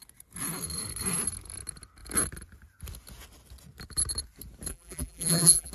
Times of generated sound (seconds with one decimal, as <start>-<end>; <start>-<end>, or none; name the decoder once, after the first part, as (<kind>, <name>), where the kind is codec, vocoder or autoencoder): 4.7-5.7 (vocoder, BigVGAN v2)